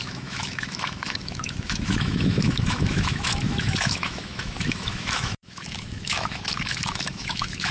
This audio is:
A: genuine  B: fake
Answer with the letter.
B